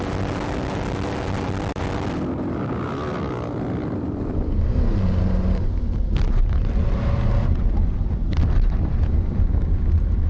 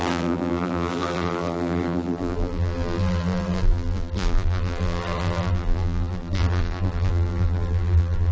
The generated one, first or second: second